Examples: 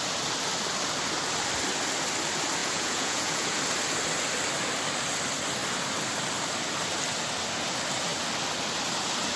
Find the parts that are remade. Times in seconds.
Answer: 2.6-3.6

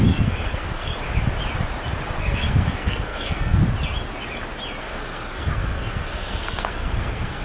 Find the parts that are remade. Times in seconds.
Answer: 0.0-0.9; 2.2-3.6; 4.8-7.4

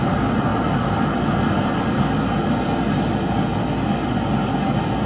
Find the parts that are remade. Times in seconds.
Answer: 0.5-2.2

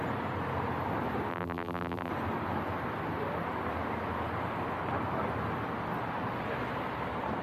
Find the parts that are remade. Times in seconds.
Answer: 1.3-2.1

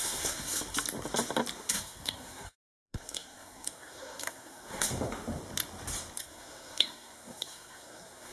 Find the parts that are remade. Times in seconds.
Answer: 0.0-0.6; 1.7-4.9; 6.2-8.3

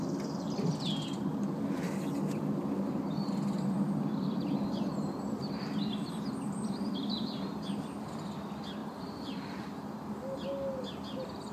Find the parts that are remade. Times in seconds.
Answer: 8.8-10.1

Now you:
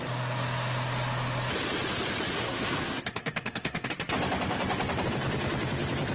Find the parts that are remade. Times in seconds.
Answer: 2.3-3.9

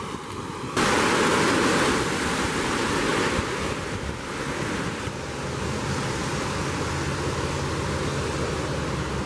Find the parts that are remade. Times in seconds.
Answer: none